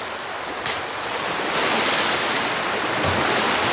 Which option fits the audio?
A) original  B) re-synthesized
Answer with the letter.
A